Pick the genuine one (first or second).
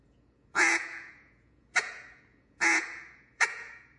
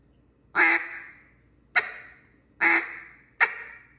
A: second